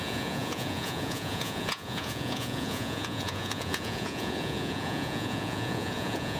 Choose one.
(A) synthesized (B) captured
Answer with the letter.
A